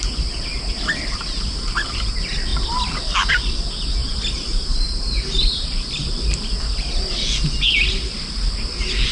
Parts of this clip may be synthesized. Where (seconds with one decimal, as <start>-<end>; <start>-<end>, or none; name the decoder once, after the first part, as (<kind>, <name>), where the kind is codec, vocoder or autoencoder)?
0.5-1.5 (vocoder, BigVGAN v2); 4.0-7.0

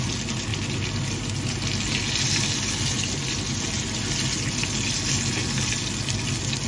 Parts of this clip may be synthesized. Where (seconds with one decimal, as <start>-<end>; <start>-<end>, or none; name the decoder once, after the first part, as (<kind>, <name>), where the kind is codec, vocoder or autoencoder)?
none

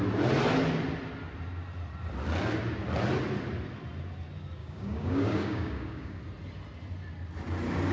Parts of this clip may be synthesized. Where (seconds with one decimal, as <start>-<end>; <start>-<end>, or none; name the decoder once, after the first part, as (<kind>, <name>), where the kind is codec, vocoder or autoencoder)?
4.6-6.2 (codec, DAC)

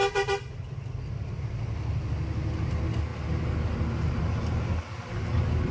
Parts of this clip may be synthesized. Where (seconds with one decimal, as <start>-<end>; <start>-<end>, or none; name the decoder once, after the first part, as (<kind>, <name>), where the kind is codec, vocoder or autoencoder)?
none

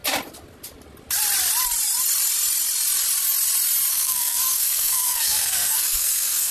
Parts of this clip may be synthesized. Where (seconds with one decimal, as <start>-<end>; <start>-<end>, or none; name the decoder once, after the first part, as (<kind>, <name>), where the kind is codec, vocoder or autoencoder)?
3.9-6.5 (codec, SNAC)

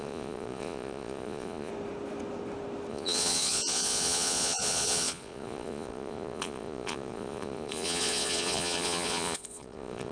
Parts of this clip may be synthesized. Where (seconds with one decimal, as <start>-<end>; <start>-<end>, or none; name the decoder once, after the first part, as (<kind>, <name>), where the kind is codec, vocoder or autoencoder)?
0.0-1.7 (vocoder, Vocos); 2.9-10.1